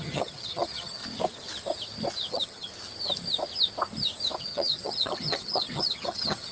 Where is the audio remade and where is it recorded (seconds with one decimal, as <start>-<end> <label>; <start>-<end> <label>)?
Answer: 0.0-1.0 remade; 1.0-2.3 recorded; 2.3-2.7 remade; 2.7-4.4 recorded; 4.4-6.5 remade